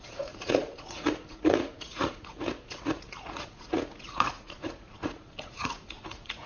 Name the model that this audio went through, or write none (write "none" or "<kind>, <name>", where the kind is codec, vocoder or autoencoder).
vocoder, Vocos